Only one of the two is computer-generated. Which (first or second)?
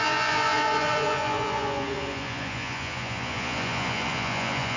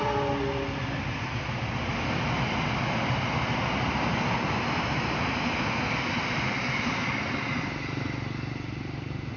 first